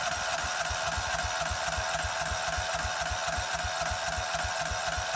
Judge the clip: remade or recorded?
recorded